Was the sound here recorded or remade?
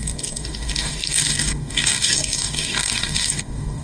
remade